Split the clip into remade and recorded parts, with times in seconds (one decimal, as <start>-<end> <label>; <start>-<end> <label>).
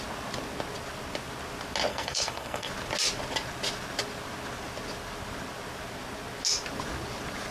0.0-1.9 recorded; 1.9-2.7 remade; 2.7-7.5 recorded